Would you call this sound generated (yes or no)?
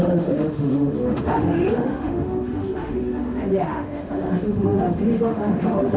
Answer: yes